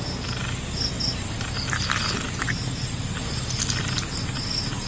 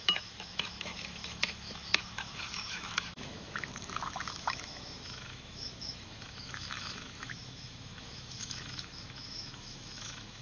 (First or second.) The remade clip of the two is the second